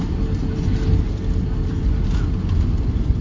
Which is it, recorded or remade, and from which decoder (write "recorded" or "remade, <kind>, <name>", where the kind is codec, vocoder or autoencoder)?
recorded